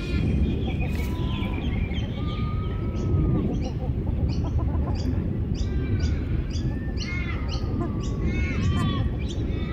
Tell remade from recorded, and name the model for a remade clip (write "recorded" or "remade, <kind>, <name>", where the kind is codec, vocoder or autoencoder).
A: remade, vocoder, BigVGAN v2